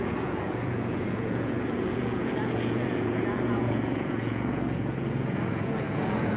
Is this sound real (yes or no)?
no